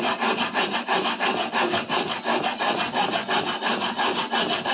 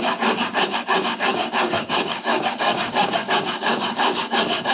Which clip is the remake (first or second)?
second